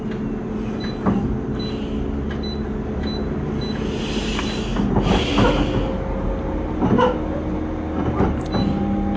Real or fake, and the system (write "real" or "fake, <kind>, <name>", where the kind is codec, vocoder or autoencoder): real